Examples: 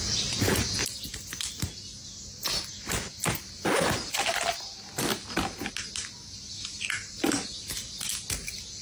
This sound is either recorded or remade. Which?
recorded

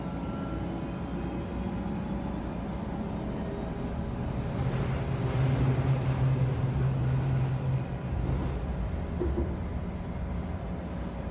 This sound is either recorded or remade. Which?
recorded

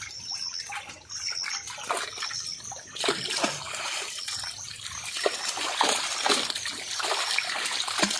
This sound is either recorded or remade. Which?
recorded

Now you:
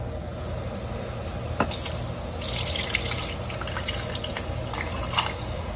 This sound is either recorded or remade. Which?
recorded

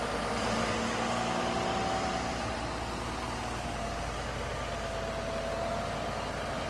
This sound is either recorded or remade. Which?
recorded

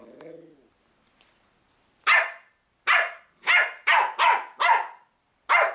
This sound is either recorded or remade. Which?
recorded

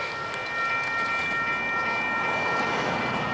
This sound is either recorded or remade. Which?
recorded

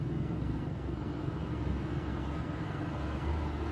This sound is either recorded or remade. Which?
remade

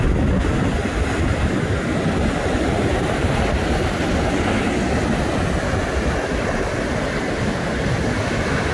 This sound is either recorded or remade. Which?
recorded